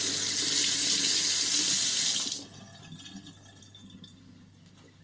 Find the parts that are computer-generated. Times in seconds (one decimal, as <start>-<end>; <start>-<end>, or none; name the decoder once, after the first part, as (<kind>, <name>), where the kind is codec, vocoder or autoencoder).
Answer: none